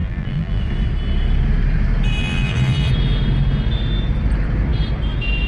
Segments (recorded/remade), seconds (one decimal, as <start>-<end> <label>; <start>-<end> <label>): 0.0-0.6 remade; 0.6-2.2 recorded; 2.2-2.9 remade; 2.9-5.5 recorded